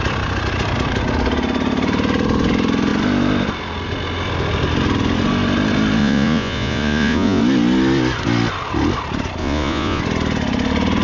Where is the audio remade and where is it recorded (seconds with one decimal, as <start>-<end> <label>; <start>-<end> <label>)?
0.0-6.0 recorded; 6.0-7.4 remade; 7.4-9.4 recorded; 9.4-10.0 remade; 10.0-11.0 recorded